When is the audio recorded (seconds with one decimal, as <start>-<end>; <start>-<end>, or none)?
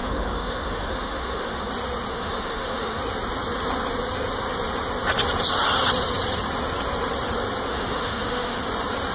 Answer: 1.7-2.1; 3.0-7.7; 8.6-9.1